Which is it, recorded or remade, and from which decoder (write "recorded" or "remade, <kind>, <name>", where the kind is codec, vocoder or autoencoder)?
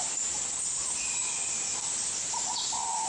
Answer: remade, vocoder, BigVGAN v2